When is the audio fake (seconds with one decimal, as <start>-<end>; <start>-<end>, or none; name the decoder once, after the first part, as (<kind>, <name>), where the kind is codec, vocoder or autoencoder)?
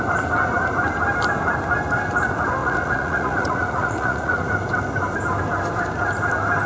2.6-4.5 (vocoder, Vocos)